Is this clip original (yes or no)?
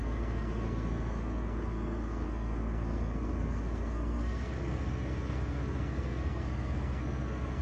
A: no